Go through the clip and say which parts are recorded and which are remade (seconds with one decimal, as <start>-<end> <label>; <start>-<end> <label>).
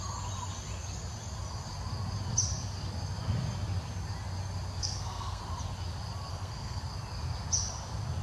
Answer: 0.0-4.8 recorded; 4.8-5.4 remade; 5.4-6.3 recorded; 6.3-6.8 remade; 6.8-8.2 recorded